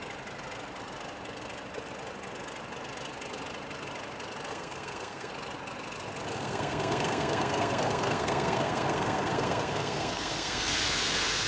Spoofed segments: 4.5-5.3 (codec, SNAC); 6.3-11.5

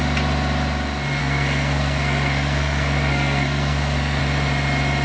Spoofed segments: 1.2-4.2 (codec, SNAC)

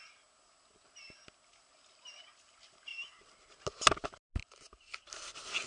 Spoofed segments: none

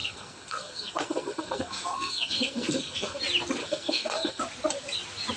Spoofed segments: 0.0-3.2 (codec, SNAC); 3.6-4.4